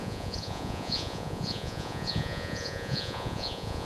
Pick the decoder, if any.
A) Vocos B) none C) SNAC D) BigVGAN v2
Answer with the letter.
A